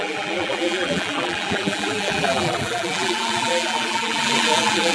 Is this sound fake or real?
fake